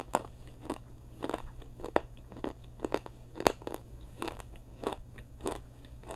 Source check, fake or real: fake